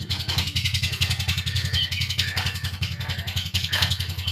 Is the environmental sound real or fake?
fake